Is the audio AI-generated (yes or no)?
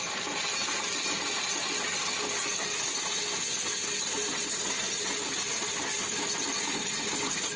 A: no